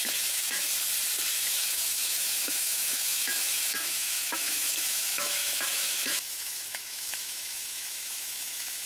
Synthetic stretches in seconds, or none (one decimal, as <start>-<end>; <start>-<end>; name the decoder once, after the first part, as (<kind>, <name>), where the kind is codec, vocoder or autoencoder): 0.0-0.7 (autoencoder, DAC-VAE); 1.3-8.9